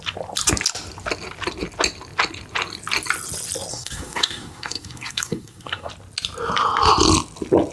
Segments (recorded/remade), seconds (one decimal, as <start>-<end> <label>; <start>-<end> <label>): 0.0-3.7 recorded; 3.7-5.9 remade; 5.9-7.7 recorded